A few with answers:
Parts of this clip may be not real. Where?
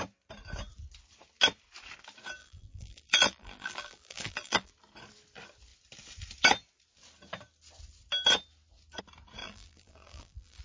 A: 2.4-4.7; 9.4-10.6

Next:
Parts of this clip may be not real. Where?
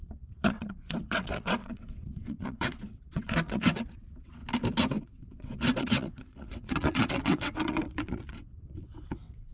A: 0.0-4.4; 5.0-9.5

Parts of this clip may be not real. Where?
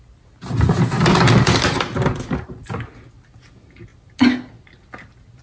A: none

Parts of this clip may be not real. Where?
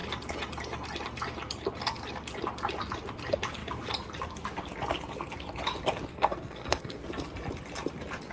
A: 6.1-7.0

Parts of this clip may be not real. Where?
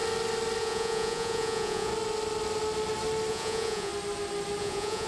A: 0.6-1.9; 3.3-3.9; 4.6-5.1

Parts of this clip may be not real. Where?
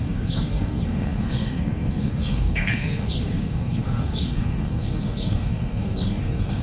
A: 0.0-6.6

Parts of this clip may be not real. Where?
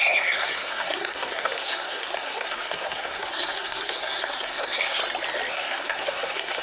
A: 0.0-5.0; 5.5-6.6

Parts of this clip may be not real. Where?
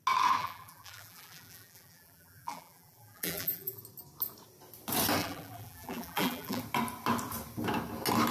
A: 0.4-3.8; 5.2-6.6